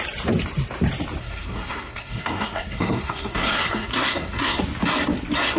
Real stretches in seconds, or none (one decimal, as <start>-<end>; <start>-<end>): 0.0-1.2; 4.6-5.6